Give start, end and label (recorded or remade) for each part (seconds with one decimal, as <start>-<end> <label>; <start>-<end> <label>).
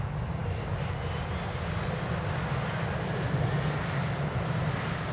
0.0-5.1 recorded